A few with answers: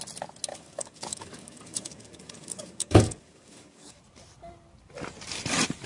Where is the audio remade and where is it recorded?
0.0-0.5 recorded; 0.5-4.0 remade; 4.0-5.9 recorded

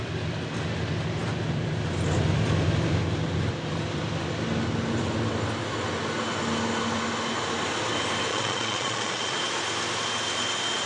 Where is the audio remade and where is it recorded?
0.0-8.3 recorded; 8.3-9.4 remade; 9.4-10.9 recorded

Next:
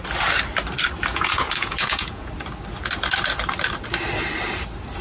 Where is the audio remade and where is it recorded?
0.0-1.1 recorded; 1.1-2.3 remade; 2.3-5.0 recorded

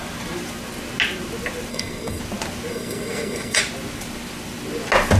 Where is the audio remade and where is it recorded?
0.0-1.7 recorded; 1.7-2.2 remade; 2.2-2.7 recorded; 2.7-3.6 remade; 3.6-5.2 recorded

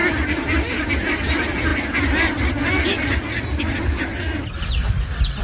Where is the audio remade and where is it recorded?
0.0-5.4 recorded